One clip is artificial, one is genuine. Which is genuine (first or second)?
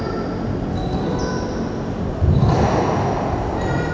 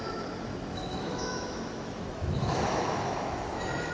first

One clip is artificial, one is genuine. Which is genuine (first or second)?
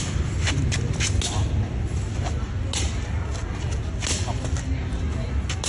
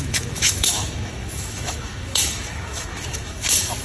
first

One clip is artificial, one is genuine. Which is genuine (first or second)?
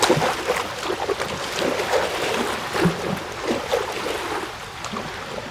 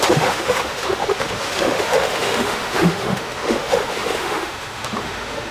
first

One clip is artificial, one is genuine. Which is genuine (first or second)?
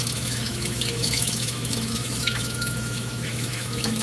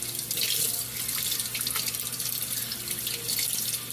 second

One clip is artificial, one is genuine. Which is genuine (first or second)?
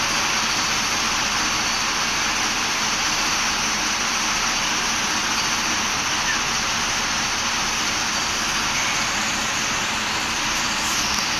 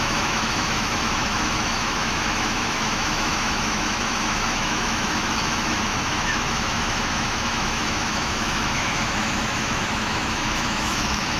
first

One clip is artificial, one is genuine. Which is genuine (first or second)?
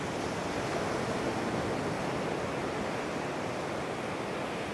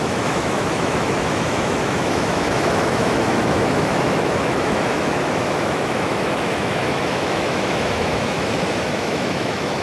first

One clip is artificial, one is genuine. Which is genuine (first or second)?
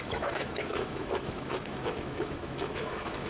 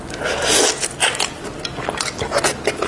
second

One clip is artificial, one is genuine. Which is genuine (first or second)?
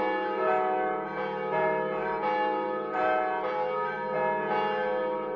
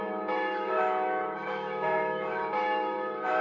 first